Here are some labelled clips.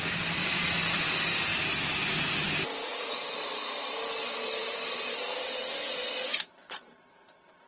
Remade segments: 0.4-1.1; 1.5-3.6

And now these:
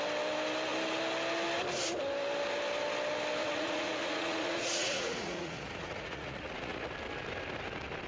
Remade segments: 3.4-6.9

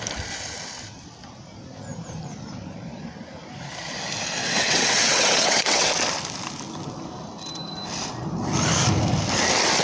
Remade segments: 4.4-5.9